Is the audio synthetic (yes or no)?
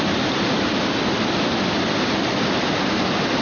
no